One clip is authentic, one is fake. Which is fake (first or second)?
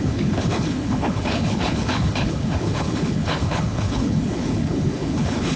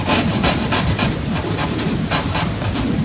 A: first